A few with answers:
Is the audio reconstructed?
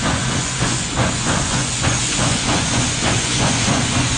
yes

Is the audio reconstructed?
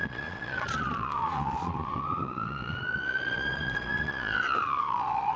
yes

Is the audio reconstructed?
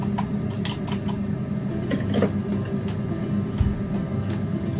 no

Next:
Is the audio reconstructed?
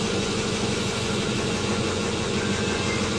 yes